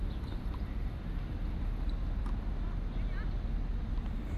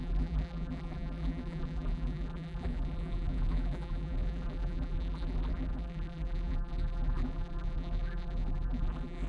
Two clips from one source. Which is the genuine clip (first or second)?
first